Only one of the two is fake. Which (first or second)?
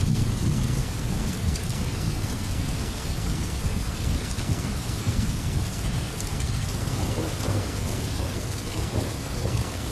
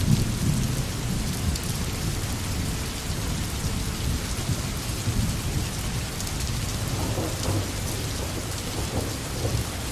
first